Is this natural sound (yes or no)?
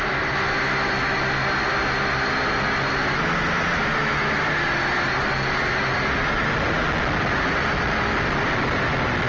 yes